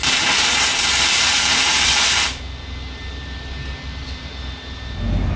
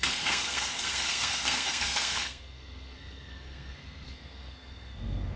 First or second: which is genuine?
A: first